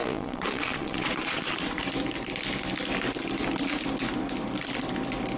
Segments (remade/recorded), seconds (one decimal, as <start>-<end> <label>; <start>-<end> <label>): 0.0-1.8 remade; 1.8-5.4 recorded